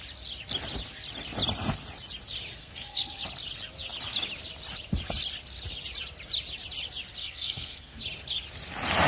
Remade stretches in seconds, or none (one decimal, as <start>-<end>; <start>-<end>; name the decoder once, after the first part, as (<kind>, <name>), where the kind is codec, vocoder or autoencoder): 2.6-3.2 (codec, SNAC); 7.2-8.0